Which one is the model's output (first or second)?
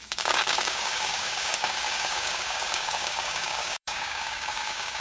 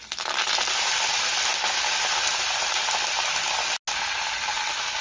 first